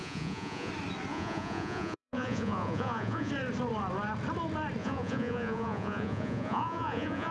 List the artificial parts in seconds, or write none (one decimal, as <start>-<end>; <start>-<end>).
0.0-0.7; 1.1-3.3; 4.8-7.3

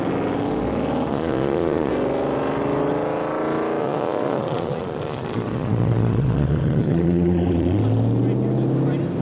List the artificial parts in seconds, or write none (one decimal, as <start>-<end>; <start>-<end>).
1.1-1.9; 3.8-7.8

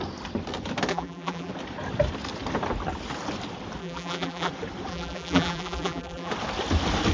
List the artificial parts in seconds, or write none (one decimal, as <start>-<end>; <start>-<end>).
0.9-1.5; 3.8-4.5; 4.9-6.3

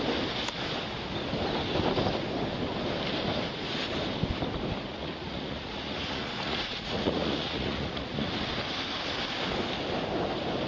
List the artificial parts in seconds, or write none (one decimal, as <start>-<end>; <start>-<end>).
4.9-8.3

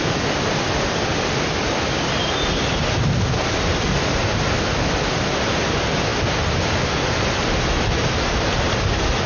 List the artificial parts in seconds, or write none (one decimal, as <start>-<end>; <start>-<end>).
none

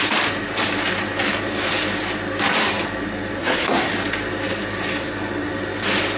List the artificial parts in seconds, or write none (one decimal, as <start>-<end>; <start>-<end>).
3.4-3.9